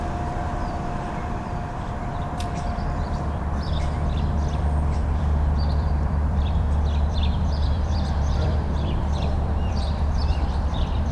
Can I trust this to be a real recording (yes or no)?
no